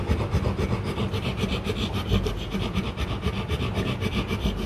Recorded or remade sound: recorded